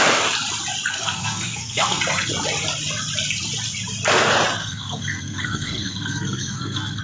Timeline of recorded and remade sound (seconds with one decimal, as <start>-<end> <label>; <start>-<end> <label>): 0.0-0.9 recorded; 0.9-2.0 remade; 2.0-4.6 recorded; 4.6-7.0 remade